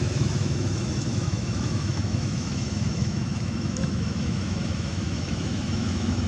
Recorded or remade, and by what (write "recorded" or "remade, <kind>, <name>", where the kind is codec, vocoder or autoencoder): remade, autoencoder, DAC-VAE